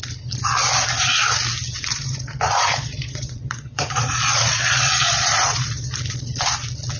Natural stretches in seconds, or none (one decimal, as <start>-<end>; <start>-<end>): 0.0-1.9; 5.9-7.0